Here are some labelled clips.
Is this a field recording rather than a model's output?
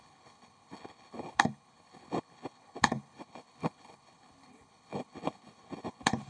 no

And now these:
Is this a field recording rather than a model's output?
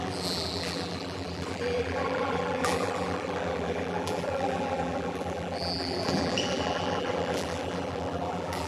no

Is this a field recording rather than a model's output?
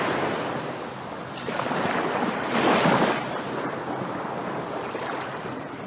yes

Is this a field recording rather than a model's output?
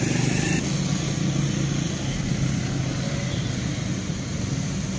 yes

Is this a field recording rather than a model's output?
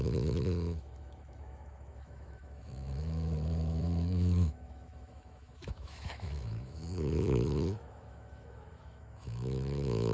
no